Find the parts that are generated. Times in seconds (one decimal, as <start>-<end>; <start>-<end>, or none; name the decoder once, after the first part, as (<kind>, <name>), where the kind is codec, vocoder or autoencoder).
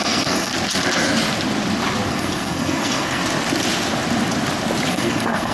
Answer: 0.0-0.5 (codec, SNAC); 2.1-3.2; 4.9-5.5